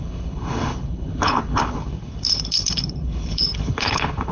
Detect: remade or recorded remade